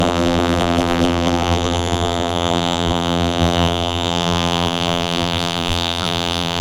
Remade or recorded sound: remade